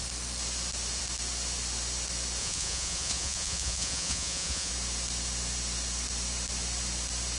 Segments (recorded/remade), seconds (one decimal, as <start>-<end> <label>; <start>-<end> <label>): 0.0-2.4 recorded; 2.4-4.7 remade; 4.7-7.4 recorded